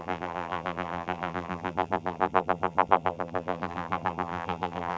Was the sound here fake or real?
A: fake